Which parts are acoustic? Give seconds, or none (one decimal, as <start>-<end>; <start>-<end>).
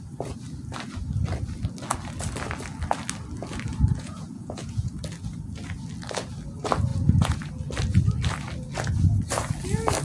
0.0-3.9; 4.9-6.9; 7.5-10.0